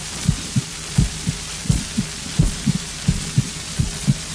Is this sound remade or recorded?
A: remade